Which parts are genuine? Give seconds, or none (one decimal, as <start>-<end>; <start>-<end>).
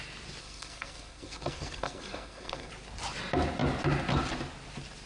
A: 0.0-0.4; 2.7-5.1